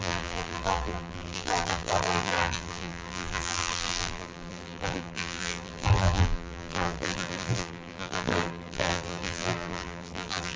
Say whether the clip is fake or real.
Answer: fake